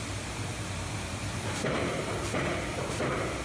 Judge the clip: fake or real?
fake